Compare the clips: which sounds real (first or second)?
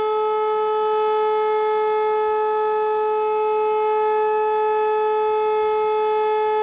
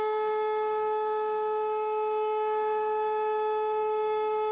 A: first